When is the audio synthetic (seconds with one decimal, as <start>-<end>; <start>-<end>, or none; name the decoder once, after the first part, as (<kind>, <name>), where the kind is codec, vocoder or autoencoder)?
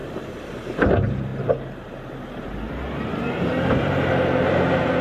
1.3-4.3 (vocoder, BigVGAN v2)